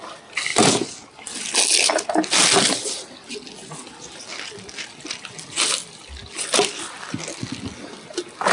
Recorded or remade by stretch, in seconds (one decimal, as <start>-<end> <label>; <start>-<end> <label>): 0.0-8.5 recorded